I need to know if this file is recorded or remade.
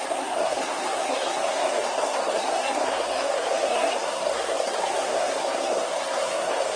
remade